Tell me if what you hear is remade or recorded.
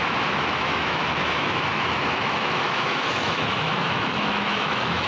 remade